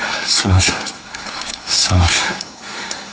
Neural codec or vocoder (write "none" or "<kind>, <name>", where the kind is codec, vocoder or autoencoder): codec, SNAC